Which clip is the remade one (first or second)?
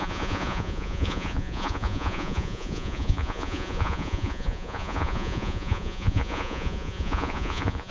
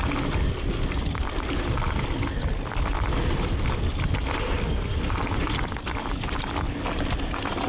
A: first